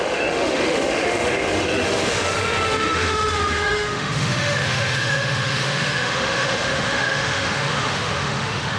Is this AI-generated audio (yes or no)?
yes